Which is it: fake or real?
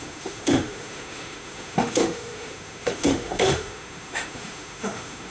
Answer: fake